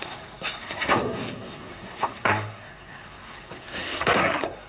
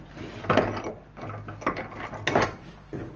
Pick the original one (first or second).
second